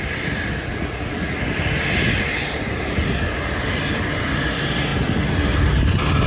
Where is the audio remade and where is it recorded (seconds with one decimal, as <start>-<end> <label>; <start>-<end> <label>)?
0.0-0.7 recorded; 0.7-1.4 remade; 1.4-6.3 recorded